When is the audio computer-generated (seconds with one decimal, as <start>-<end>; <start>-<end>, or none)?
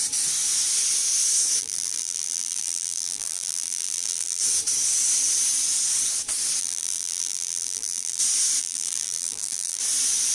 1.6-4.4; 6.6-8.2; 8.6-9.8